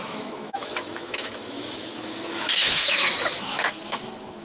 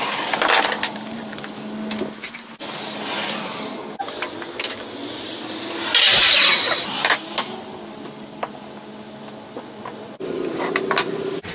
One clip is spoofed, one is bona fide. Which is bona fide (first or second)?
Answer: second